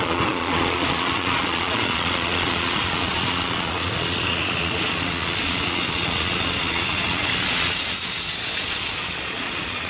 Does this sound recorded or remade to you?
remade